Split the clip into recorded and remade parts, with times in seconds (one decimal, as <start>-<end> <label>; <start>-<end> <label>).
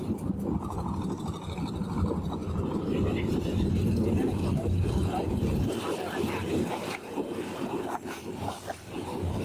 0.0-6.4 recorded; 6.4-9.0 remade; 9.0-9.4 recorded